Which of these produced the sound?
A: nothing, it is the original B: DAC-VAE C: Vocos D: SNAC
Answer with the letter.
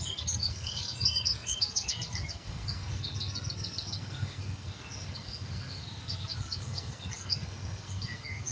D